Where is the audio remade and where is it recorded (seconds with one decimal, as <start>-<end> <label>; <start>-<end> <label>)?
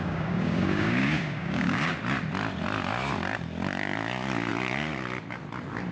0.0-1.9 remade; 1.9-5.9 recorded